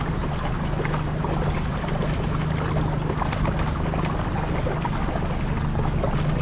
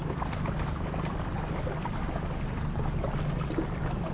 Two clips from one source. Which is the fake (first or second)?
second